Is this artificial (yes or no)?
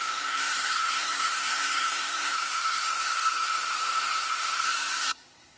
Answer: yes